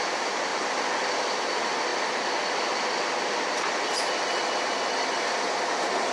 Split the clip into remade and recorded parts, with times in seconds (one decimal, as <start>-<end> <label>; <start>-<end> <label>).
0.0-6.1 recorded